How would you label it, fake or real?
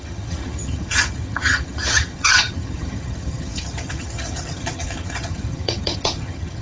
fake